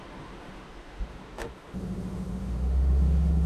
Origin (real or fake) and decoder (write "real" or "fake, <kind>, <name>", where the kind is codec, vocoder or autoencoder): fake, autoencoder, DAC-VAE